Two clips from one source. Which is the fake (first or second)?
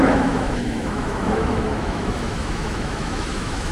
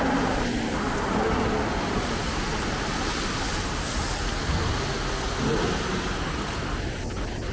first